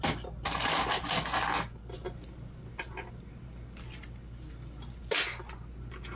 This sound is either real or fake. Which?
real